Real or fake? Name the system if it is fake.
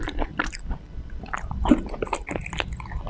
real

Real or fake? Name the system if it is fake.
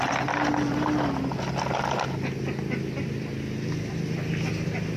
real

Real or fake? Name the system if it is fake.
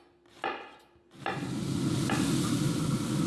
real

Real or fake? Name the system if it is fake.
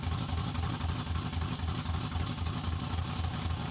real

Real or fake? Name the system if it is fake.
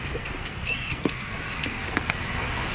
fake, codec, SNAC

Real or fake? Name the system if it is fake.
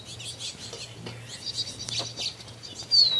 real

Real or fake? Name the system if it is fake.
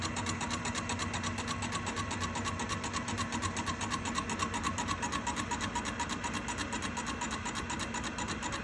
real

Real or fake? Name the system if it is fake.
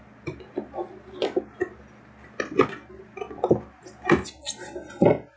real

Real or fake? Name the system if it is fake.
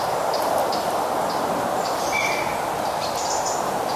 real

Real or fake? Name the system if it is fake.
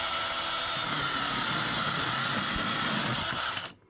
real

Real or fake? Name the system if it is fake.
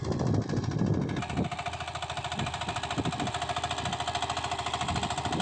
real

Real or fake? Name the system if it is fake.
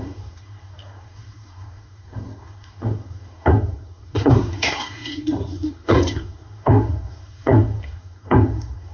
fake, codec, SNAC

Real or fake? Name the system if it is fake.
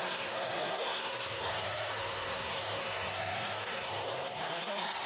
fake, codec, SNAC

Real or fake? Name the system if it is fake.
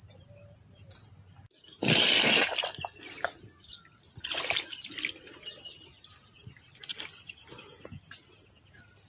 real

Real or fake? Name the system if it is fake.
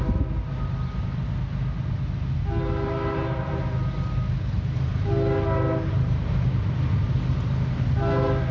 real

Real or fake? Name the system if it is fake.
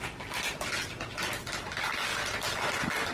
real